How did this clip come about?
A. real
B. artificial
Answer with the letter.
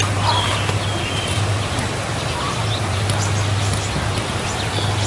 A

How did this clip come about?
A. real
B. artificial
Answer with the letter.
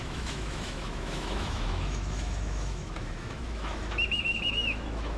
B